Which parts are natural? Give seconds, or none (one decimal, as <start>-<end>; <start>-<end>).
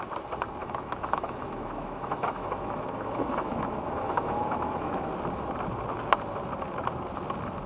0.0-0.6; 5.1-7.7